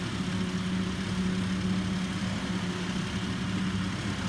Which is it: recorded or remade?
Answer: recorded